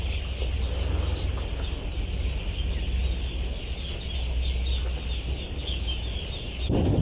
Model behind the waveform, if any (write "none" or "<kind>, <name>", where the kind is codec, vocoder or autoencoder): none